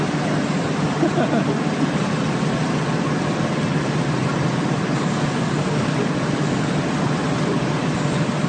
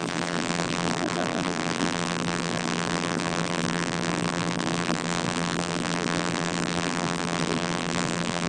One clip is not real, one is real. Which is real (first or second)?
first